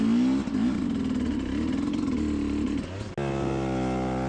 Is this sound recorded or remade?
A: recorded